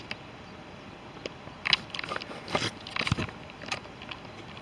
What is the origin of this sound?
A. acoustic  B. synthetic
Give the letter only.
A